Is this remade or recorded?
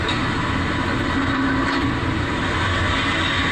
recorded